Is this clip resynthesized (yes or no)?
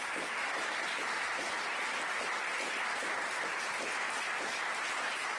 no